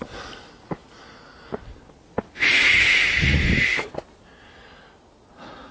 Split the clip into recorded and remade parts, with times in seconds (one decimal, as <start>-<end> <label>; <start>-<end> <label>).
0.0-2.6 recorded; 2.6-3.4 remade; 3.4-5.7 recorded